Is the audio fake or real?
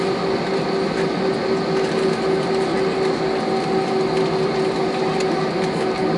real